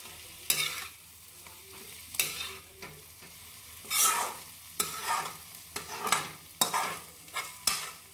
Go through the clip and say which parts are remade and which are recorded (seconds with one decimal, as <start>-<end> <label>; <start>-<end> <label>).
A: 0.0-8.1 recorded